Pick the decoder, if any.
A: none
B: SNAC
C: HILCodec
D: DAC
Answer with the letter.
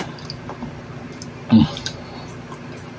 A